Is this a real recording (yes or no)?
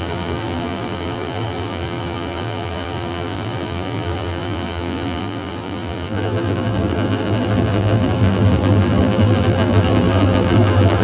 no